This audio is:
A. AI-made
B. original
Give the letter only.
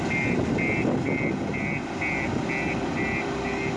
B